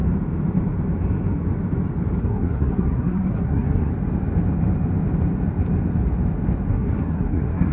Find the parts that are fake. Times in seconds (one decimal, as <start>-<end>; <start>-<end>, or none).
2.2-3.9; 6.7-7.7